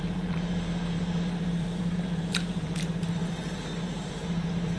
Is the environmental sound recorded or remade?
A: remade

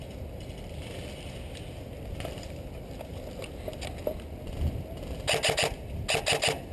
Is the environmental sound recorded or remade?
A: recorded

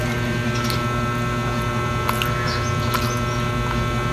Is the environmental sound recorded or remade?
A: recorded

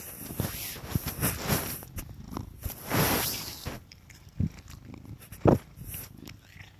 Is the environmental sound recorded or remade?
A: recorded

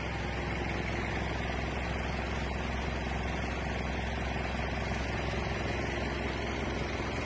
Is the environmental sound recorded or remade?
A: recorded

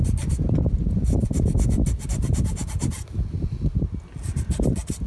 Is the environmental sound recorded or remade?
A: recorded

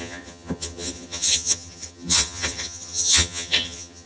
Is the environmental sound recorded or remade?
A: remade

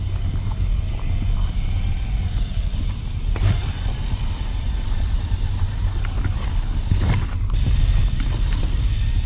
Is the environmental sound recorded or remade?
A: recorded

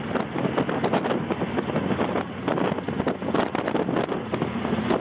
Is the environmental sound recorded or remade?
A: recorded